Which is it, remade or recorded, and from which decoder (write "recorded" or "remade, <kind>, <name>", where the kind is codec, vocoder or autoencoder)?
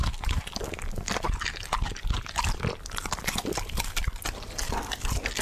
recorded